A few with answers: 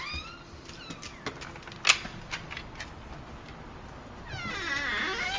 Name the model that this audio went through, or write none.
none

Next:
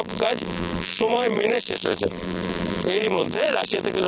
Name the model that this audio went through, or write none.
vocoder, BigVGAN v2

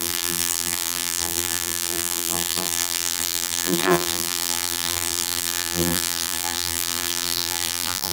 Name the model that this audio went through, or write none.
vocoder, BigVGAN v2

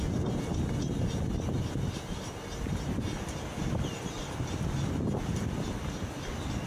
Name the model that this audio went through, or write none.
none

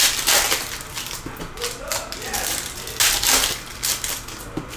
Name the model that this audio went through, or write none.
none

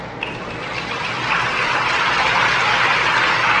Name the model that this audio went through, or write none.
none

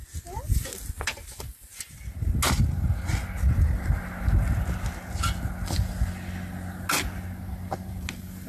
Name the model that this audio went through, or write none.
none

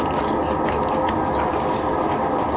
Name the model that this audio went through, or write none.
none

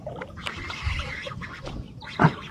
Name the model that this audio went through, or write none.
none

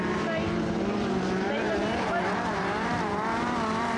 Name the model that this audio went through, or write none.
vocoder, BigVGAN v2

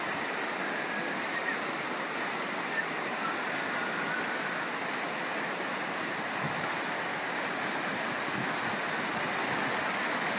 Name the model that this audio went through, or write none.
none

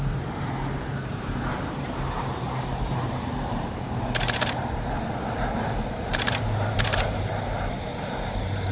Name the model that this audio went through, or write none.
vocoder, BigVGAN v2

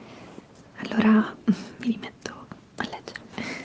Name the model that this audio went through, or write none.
vocoder, BigVGAN v2